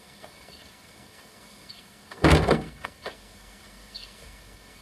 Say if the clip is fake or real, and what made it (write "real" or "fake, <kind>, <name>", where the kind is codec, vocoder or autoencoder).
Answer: fake, codec, SNAC